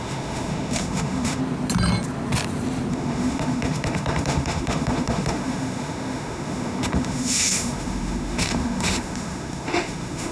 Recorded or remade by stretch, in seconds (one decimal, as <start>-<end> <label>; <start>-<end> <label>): 0.0-1.4 remade; 1.4-2.9 recorded; 2.9-10.3 remade